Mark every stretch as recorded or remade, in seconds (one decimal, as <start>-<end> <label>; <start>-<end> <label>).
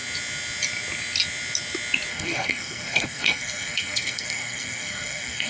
0.0-2.1 recorded; 2.1-5.5 remade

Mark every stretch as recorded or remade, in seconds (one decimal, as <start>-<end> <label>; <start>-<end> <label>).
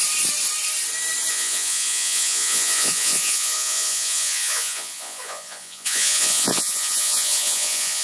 0.0-1.3 recorded; 1.3-8.0 remade